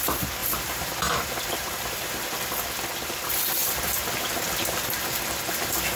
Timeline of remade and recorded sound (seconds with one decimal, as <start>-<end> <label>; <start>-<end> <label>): 0.0-0.4 recorded; 0.4-2.2 remade; 2.2-6.0 recorded